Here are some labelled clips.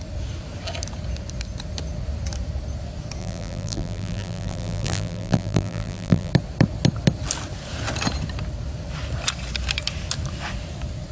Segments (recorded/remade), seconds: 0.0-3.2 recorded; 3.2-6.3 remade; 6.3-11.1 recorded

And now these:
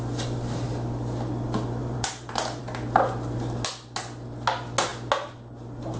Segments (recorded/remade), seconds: 0.0-1.8 recorded; 1.8-2.6 remade; 2.6-6.0 recorded

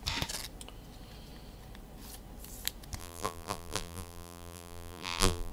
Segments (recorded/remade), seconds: 0.0-3.0 recorded; 3.0-5.5 remade

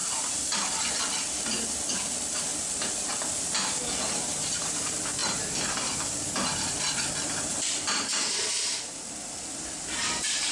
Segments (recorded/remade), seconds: 0.0-2.5 remade; 2.5-4.2 recorded; 4.2-10.5 remade

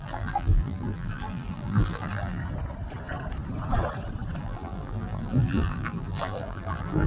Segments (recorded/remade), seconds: 0.0-2.4 remade; 2.4-4.4 recorded; 4.4-7.1 remade

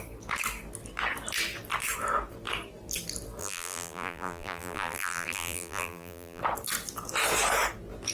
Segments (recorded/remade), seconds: 0.0-3.4 recorded; 3.4-6.4 remade; 6.4-8.1 recorded

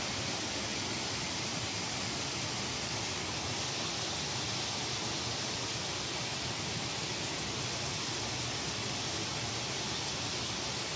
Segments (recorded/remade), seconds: 0.0-11.0 recorded